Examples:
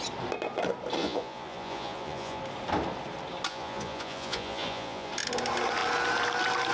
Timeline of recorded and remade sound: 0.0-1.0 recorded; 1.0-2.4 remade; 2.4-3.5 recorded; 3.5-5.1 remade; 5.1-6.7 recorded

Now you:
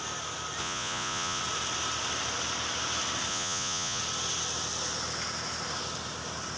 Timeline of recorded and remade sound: 0.0-0.6 recorded; 0.6-1.4 remade; 1.4-3.3 recorded; 3.3-4.0 remade; 4.0-6.6 recorded

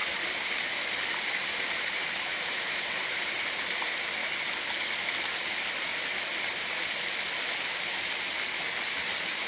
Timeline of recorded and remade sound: 0.0-2.3 recorded; 2.3-2.9 remade; 2.9-9.5 recorded

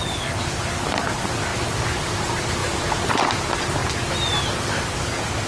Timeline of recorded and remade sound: 0.0-2.6 recorded; 2.6-3.4 remade; 3.4-5.5 recorded

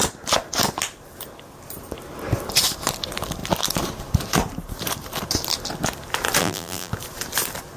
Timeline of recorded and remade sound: 0.0-6.4 recorded; 6.4-6.9 remade; 6.9-7.8 recorded

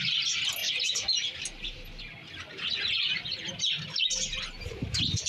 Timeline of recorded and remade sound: 0.0-5.3 recorded

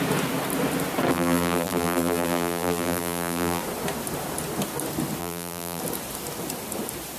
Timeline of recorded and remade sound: 0.0-1.1 recorded; 1.1-3.6 remade; 3.6-5.2 recorded; 5.2-5.8 remade; 5.8-7.2 recorded